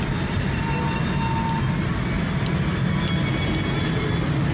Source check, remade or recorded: recorded